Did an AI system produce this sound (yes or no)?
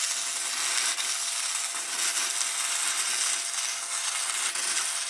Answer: no